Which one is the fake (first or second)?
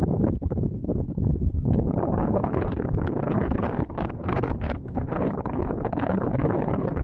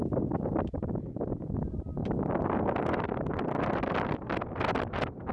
first